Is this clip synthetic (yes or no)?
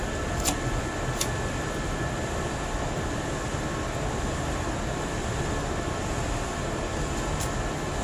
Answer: yes